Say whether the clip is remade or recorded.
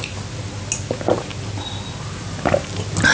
recorded